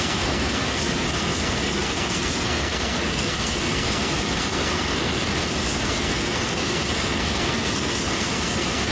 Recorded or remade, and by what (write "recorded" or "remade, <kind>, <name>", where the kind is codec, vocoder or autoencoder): remade, codec, SNAC